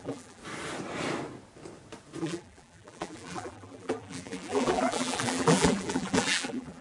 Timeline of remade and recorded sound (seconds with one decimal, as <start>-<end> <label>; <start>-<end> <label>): 0.0-0.4 remade; 0.4-2.2 recorded; 2.2-6.8 remade